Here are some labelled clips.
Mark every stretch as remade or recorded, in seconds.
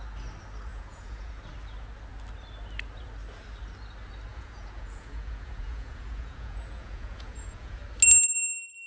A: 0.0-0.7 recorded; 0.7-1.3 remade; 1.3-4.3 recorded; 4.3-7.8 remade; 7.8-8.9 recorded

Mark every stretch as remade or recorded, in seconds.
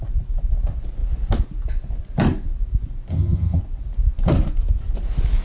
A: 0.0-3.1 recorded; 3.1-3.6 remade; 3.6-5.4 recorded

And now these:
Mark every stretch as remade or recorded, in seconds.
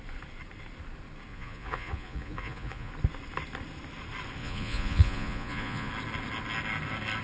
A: 0.0-1.3 recorded; 1.3-2.9 remade; 2.9-4.4 recorded; 4.4-5.9 remade; 5.9-7.2 recorded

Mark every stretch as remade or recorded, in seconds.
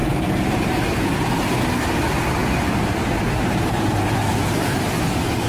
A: 0.0-0.8 remade; 0.8-2.4 recorded; 2.4-4.9 remade; 4.9-5.5 recorded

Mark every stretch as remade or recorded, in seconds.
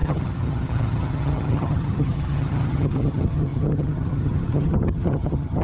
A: 0.0-5.6 remade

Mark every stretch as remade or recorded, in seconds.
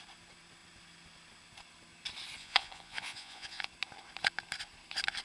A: 0.0-2.4 recorded; 2.4-3.7 remade; 3.7-5.2 recorded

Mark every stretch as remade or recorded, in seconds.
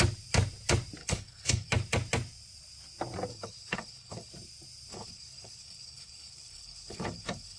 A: 0.0-1.0 recorded; 1.0-1.7 remade; 1.7-3.3 recorded; 3.3-4.3 remade; 4.3-4.9 recorded; 4.9-7.6 remade